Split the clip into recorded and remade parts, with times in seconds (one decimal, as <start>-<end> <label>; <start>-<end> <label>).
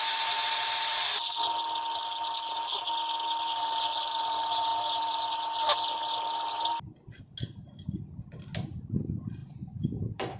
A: 0.0-9.4 recorded; 9.4-10.4 remade